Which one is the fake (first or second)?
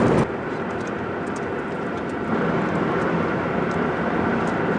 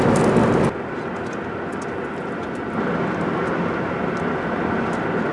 first